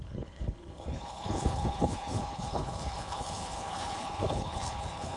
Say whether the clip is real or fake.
fake